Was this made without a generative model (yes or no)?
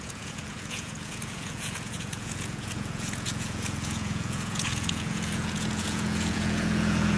no